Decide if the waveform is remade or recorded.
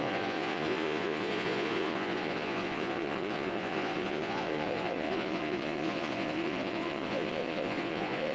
remade